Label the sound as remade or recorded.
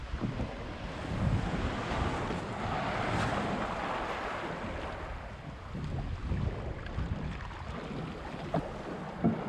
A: recorded